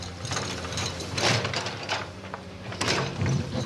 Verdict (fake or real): fake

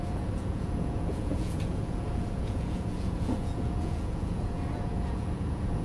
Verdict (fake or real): fake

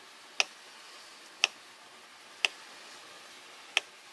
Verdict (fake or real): real